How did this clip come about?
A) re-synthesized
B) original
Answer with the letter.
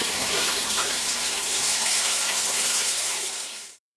A